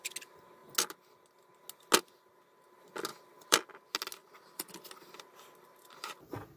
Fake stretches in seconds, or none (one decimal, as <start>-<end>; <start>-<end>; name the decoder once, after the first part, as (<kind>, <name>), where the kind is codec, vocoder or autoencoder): 3.1-3.6 (vocoder, BigVGAN v2); 4.2-4.8